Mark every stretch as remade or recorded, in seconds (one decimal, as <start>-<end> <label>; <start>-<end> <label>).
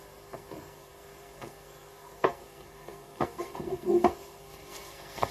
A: 0.0-5.3 remade